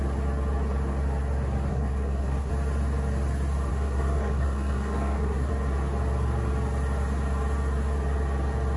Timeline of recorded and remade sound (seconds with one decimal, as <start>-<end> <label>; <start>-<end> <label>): 0.0-1.7 recorded; 1.7-2.5 remade; 2.5-3.7 recorded; 3.7-5.5 remade; 5.5-8.8 recorded

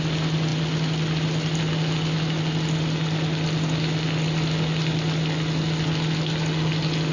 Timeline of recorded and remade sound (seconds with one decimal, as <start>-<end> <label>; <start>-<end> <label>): 0.0-7.1 recorded

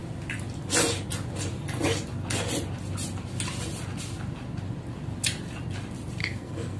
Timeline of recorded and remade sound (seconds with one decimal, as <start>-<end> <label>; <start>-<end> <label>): 0.0-6.2 recorded; 6.2-6.8 remade